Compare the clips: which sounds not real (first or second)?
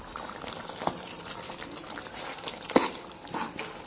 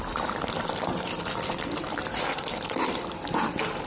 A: second